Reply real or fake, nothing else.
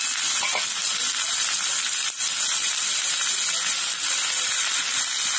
real